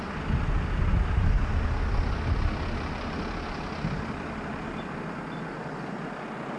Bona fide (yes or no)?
yes